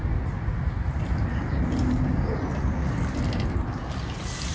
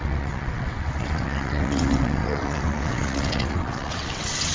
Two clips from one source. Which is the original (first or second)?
first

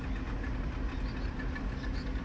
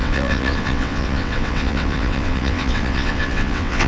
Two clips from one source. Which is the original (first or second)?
first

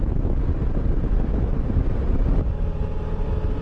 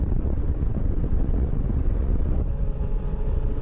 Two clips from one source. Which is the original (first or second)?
first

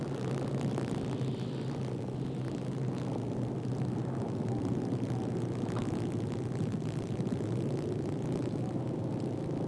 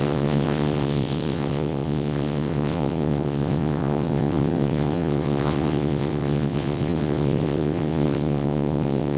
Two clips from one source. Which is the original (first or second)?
first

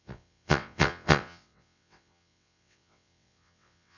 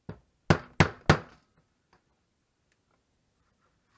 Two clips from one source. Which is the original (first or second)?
second